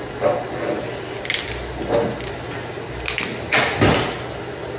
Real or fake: real